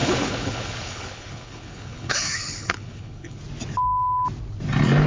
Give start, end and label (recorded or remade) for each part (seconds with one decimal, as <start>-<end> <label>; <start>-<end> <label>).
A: 0.0-3.4 remade; 3.4-5.1 recorded